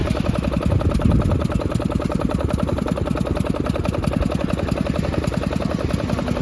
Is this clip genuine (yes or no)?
yes